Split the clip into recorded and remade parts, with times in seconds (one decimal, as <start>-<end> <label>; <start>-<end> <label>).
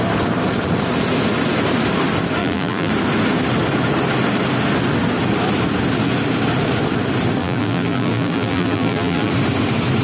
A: 0.0-2.4 recorded; 2.4-2.9 remade; 2.9-7.4 recorded; 7.4-9.3 remade; 9.3-10.0 recorded